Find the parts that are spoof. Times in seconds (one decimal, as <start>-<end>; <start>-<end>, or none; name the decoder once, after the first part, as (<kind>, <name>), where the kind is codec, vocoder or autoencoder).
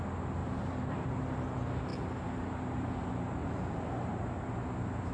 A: 0.4-1.1 (vocoder, BigVGAN v2); 3.4-4.2